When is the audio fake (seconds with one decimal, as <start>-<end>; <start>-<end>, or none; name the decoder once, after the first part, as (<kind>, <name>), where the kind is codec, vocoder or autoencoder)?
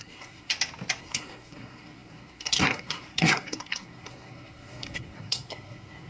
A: 0.0-0.5 (codec, SNAC); 1.0-6.1